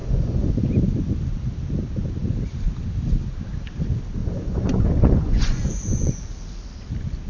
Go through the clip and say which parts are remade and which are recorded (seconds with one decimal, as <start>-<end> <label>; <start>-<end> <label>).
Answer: 0.0-0.7 remade; 0.7-4.2 recorded; 4.2-6.2 remade; 6.2-7.3 recorded